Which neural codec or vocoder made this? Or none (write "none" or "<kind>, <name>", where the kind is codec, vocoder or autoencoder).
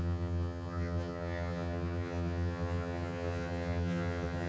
vocoder, HiFi-GAN